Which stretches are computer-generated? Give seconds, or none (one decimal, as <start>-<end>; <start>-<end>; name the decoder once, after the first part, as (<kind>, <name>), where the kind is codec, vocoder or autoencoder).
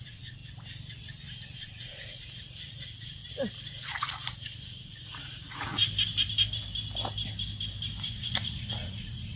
0.0-0.4 (vocoder, Vocos); 1.4-3.2; 3.7-5.8; 8.1-9.4